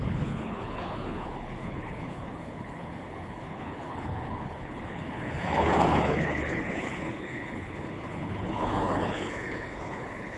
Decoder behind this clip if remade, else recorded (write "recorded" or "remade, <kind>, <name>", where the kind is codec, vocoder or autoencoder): remade, codec, HILCodec